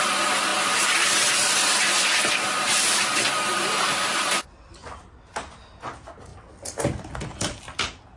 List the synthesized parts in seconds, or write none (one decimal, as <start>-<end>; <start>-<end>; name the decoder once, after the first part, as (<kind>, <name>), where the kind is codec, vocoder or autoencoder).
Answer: 0.5-4.5 (vocoder, BigVGAN v2)